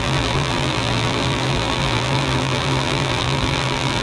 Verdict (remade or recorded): remade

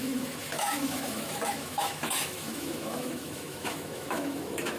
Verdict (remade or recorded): remade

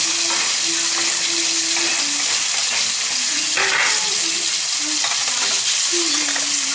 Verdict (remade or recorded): recorded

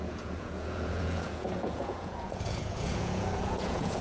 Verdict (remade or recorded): remade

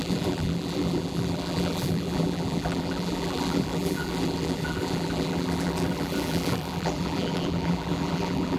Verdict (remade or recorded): remade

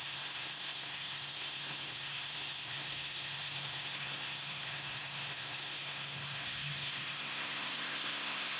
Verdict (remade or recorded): remade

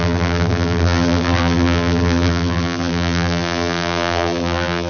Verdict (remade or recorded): remade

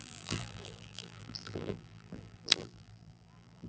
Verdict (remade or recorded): remade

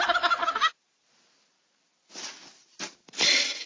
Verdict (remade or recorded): recorded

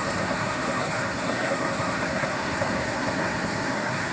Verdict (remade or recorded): remade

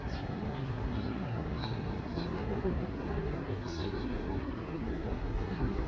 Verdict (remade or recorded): remade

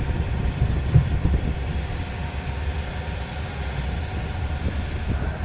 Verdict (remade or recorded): recorded